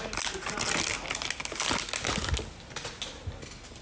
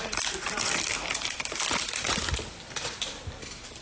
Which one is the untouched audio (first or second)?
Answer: first